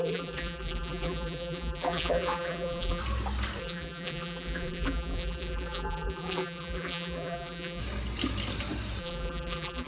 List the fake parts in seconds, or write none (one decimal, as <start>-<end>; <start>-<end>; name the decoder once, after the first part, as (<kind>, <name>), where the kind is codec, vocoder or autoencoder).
0.0-3.0 (vocoder, BigVGAN v2); 3.6-7.8; 9.0-9.9